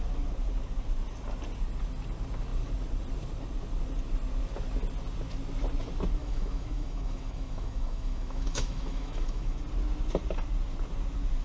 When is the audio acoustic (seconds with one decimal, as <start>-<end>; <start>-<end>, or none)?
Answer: 0.0-6.2; 9.6-11.4